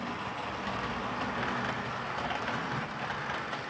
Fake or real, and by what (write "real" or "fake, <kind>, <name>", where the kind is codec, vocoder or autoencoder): real